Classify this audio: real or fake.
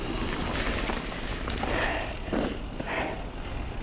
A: real